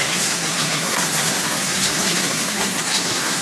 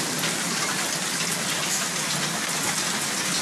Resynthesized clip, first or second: first